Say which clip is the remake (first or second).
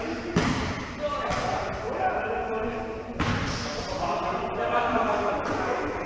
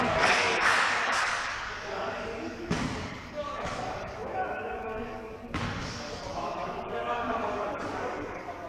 second